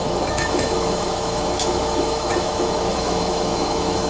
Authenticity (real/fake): fake